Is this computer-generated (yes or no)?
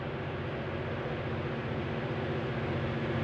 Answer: no